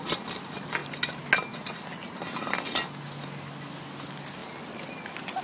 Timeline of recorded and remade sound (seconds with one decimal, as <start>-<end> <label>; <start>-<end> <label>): 0.0-5.4 recorded